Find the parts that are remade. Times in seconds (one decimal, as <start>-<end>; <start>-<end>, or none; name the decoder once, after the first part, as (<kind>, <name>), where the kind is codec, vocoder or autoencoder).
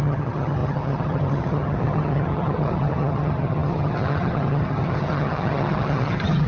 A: 0.0-6.5 (vocoder, HiFi-GAN)